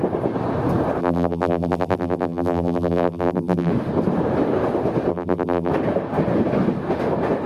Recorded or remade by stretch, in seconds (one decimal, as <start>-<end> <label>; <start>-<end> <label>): 0.0-1.0 recorded; 1.0-3.7 remade; 3.7-5.1 recorded; 5.1-5.7 remade; 5.7-7.5 recorded